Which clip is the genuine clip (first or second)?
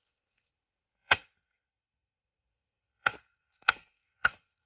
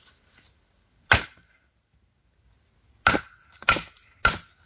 second